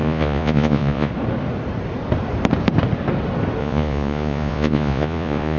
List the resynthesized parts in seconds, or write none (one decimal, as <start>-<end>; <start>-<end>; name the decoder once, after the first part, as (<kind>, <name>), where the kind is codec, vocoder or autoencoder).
0.0-1.1 (vocoder, Vocos); 3.6-5.6